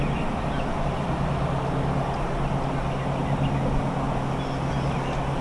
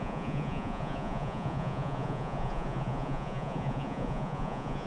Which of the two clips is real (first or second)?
first